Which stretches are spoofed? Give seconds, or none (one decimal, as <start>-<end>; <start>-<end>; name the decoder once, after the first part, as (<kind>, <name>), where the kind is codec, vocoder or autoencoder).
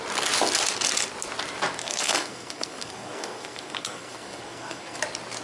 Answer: 1.8-5.0 (codec, SNAC)